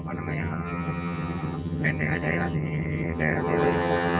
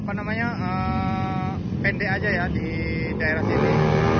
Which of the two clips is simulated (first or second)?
first